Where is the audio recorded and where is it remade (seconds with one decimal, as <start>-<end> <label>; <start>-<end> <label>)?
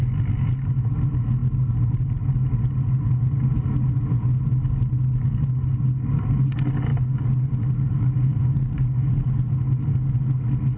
0.0-10.8 recorded